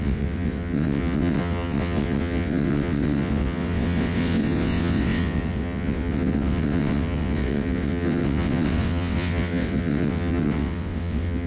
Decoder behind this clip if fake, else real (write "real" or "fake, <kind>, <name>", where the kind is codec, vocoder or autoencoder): fake, vocoder, WaveNeXt